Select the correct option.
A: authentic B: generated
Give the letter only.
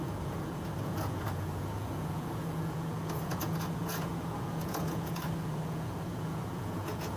B